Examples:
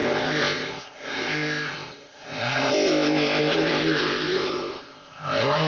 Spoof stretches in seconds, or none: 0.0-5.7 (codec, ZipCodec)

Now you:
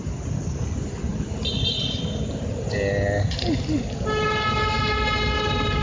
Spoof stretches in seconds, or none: none

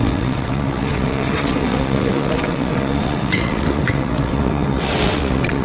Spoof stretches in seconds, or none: 0.0-5.6 (vocoder, WaveNeXt)

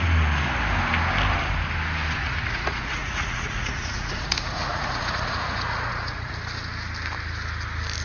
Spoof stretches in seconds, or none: 2.2-6.3 (vocoder, Vocos)

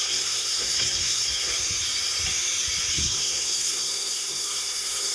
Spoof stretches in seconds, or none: 0.0-1.5 (codec, SNAC); 2.9-5.1

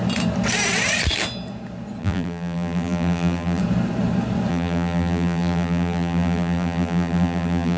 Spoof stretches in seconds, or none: 2.0-3.6 (vocoder, BigVGAN v2); 4.5-7.8